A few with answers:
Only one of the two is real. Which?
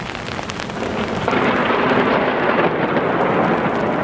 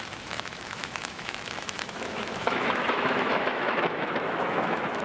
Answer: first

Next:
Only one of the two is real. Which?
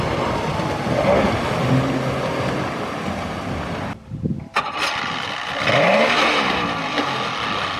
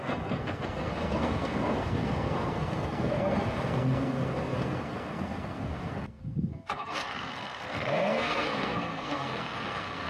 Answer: first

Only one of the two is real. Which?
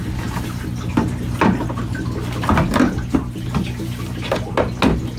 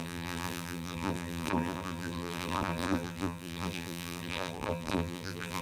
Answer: first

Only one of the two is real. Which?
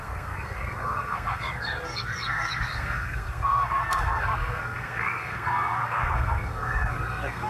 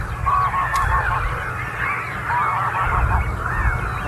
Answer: second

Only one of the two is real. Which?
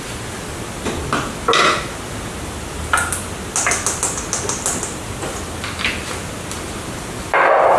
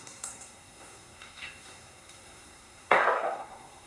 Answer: first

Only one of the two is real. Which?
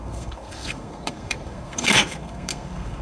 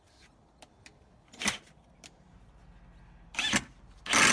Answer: second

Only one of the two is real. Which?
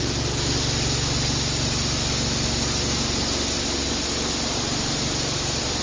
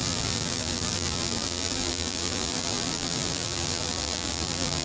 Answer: first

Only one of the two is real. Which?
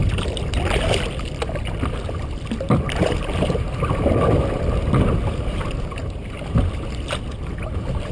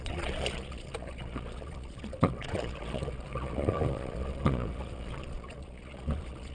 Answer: first